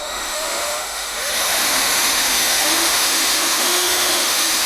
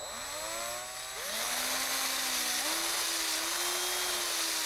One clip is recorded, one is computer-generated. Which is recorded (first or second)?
second